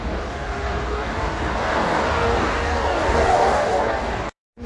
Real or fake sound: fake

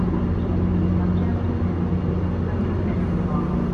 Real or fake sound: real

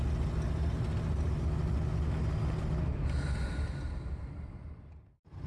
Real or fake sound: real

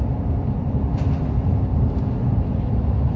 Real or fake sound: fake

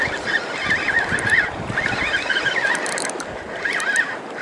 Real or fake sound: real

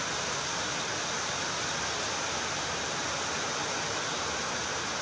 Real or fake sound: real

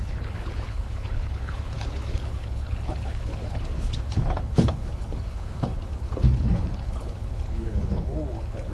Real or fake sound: fake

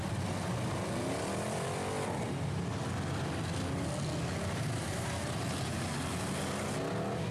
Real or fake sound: real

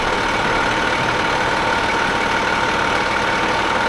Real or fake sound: real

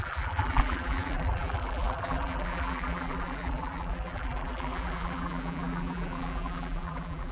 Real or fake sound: fake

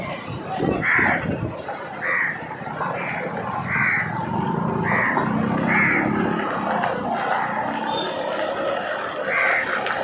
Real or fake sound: real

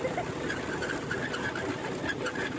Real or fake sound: real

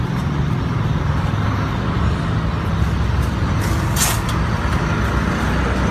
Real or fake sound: real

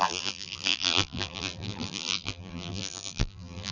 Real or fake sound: fake